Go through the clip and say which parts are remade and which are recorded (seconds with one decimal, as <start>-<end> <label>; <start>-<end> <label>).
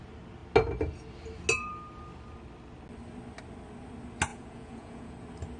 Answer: 0.0-4.3 recorded; 4.3-5.1 remade; 5.1-5.6 recorded